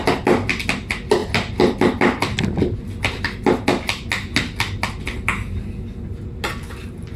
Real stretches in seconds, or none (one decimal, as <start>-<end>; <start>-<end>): 0.0-7.2